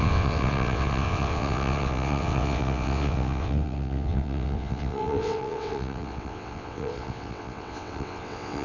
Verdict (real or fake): fake